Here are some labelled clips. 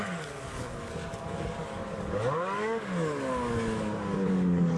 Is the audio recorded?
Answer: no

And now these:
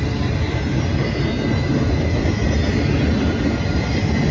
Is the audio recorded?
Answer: yes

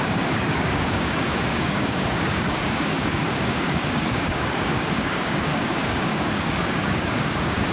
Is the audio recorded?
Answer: no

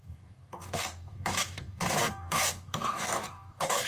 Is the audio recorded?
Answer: no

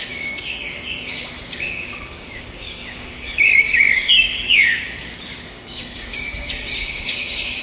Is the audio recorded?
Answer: no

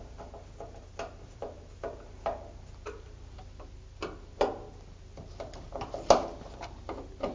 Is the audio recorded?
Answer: yes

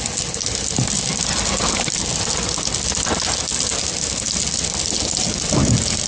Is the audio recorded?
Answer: yes